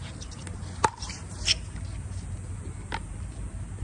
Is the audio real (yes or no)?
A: yes